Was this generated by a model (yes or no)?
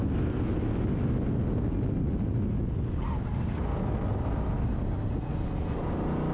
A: no